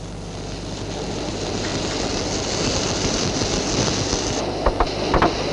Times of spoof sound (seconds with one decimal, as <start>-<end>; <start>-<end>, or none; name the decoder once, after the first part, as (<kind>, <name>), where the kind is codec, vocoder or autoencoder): none